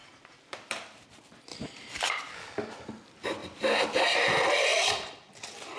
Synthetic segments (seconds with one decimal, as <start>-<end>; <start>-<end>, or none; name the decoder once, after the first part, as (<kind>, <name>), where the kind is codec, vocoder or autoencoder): 0.0-1.1 (vocoder, BigVGAN v2); 1.5-2.1; 3.4-4.0; 4.7-5.8